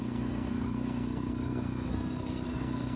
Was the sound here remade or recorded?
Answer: remade